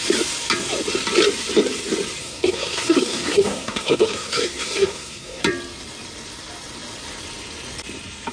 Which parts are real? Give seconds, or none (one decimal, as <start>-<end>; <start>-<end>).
0.0-2.2; 5.4-8.3